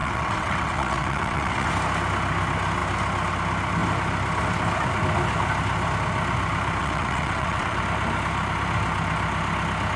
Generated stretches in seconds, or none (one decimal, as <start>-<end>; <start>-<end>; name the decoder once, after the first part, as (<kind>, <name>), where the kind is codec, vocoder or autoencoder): 0.0-1.7 (vocoder, WaveNeXt); 6.8-7.8